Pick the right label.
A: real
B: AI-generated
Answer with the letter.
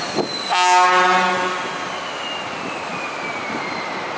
A